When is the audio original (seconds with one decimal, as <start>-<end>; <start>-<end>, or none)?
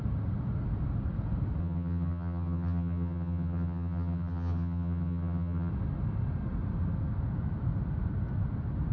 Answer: 0.0-1.6; 5.7-8.9